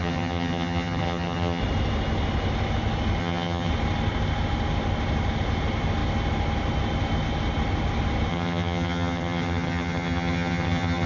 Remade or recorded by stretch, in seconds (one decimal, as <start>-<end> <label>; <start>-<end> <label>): 0.0-1.6 remade; 1.6-3.2 recorded; 3.2-3.7 remade; 3.7-8.3 recorded; 8.3-11.1 remade